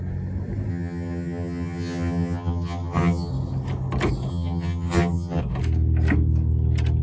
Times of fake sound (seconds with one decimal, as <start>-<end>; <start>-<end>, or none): 0.7-3.3; 4.3-5.4